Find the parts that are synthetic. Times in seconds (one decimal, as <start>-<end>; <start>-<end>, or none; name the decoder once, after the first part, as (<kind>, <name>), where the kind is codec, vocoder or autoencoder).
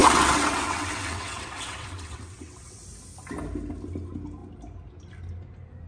0.0-2.8 (vocoder, WaveNeXt)